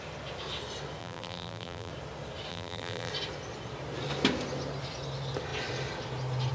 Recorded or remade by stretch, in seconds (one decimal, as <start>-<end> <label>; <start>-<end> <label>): 0.0-1.0 recorded; 1.0-1.9 remade; 1.9-2.5 recorded; 2.5-3.1 remade; 3.1-6.5 recorded